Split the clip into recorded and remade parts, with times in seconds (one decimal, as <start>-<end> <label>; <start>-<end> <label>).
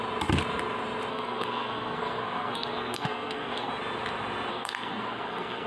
0.0-1.1 recorded; 1.1-3.7 remade; 3.7-4.5 recorded; 4.5-5.7 remade